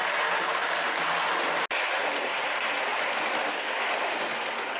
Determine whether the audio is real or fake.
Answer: real